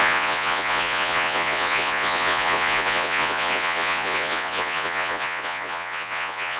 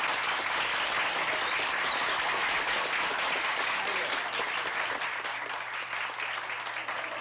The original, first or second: second